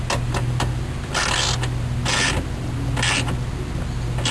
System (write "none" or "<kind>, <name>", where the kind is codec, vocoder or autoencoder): none